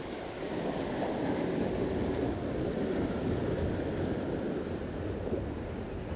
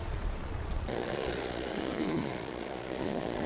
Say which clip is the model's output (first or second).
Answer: second